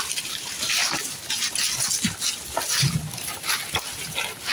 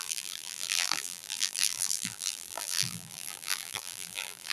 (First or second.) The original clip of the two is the first